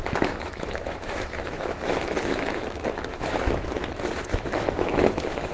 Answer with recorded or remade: remade